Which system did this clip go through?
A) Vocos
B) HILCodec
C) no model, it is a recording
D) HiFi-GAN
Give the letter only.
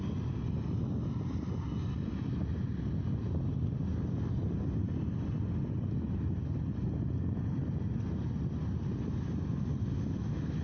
C